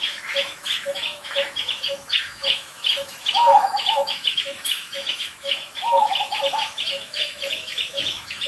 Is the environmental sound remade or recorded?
remade